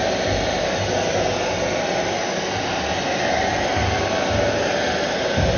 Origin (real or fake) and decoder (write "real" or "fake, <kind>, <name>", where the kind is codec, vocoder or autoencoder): real